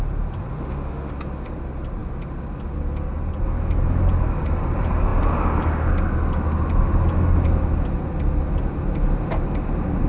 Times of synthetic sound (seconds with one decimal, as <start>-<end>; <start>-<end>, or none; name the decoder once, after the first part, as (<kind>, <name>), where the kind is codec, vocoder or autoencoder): 0.5-1.1 (autoencoder, DAC-VAE)